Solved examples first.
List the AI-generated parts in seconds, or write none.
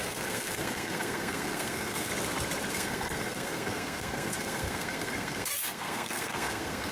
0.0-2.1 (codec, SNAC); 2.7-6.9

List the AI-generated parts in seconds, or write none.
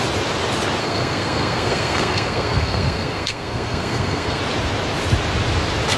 0.8-4.4 (codec, SNAC)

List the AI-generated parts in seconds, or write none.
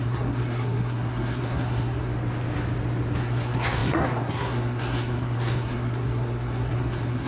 0.0-2.1 (codec, SNAC); 3.2-7.3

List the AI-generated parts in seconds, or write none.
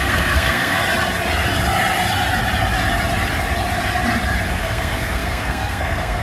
0.0-0.8 (codec, SNAC); 4.5-6.2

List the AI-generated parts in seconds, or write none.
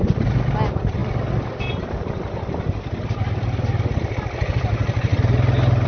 none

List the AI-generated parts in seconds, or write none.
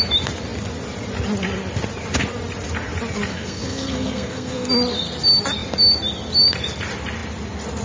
3.3-4.7 (codec, SNAC)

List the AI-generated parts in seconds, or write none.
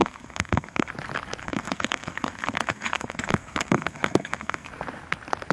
0.0-0.9 (codec, SNAC); 1.4-4.7